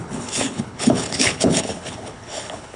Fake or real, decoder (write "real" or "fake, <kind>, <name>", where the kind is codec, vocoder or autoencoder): fake, codec, HILCodec